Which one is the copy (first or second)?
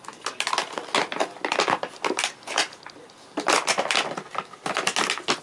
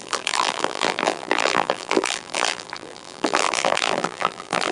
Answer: second